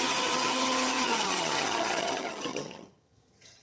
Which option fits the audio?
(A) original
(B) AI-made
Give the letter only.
B